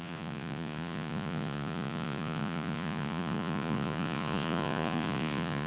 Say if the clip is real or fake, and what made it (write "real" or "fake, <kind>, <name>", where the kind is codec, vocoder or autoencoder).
fake, vocoder, Vocos